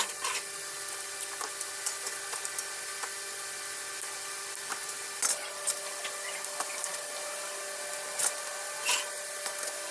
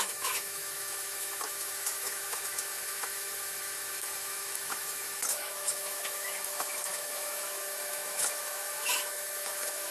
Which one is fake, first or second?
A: second